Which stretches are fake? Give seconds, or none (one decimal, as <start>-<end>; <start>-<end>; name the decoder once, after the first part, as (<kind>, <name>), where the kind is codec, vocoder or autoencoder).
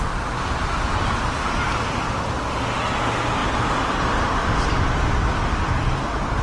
none